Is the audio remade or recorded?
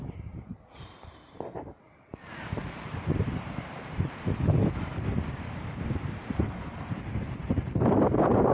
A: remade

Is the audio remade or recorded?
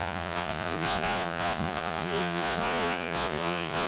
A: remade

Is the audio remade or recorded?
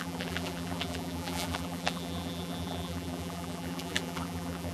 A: remade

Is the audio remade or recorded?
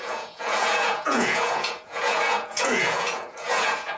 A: remade